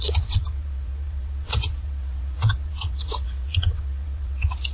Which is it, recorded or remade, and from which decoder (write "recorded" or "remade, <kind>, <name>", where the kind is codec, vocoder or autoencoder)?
remade, vocoder, WaveNeXt